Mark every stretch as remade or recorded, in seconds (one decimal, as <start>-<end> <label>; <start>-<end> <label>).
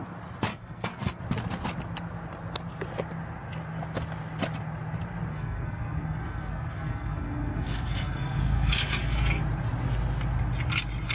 0.0-0.5 recorded; 0.5-1.2 remade; 1.2-5.3 recorded; 5.3-9.4 remade; 9.4-11.1 recorded